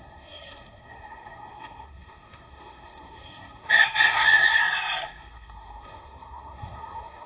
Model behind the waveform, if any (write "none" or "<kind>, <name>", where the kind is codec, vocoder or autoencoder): codec, SNAC